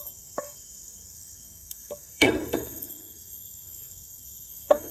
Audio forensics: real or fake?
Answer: fake